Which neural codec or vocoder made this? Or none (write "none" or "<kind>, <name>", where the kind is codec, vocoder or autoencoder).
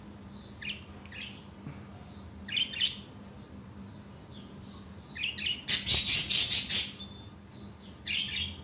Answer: none